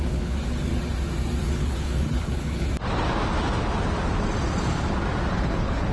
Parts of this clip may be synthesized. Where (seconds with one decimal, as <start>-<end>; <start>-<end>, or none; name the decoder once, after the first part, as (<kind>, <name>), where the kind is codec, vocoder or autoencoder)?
0.0-0.7 (codec, HILCodec); 1.4-2.7; 5.3-5.9